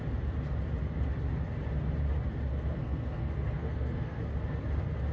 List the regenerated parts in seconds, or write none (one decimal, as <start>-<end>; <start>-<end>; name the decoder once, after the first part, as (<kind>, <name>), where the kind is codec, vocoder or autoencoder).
2.5-4.2 (codec, SNAC)